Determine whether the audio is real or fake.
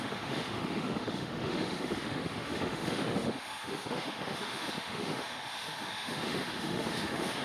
fake